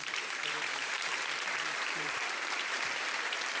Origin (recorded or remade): remade